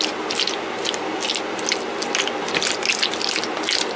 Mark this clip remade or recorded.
recorded